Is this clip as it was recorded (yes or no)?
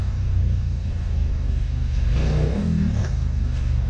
no